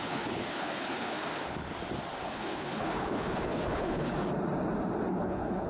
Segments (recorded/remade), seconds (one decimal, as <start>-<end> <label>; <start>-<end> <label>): 0.0-1.7 remade; 1.7-2.2 recorded; 2.2-4.1 remade; 4.1-5.1 recorded; 5.1-5.7 remade